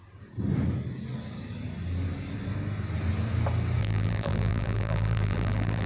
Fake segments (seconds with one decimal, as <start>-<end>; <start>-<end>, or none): 3.8-5.9